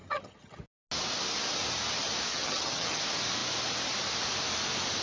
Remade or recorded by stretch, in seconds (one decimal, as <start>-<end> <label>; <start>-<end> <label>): 0.0-0.6 remade; 0.6-2.3 recorded; 2.3-3.0 remade; 3.0-5.0 recorded

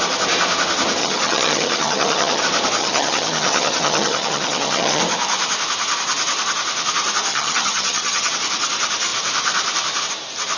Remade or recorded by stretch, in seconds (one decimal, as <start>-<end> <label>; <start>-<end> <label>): 0.0-1.0 recorded; 1.0-2.4 remade; 2.4-2.8 recorded; 2.8-5.0 remade; 5.0-7.3 recorded; 7.3-8.3 remade; 8.3-10.6 recorded